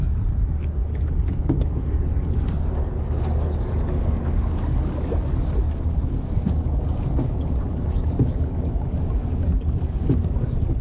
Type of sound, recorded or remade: remade